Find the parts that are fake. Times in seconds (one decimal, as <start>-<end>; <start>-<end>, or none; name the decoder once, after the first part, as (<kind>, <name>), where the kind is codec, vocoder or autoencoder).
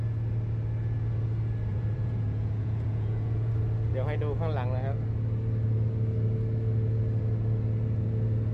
1.7-3.5 (vocoder, Vocos)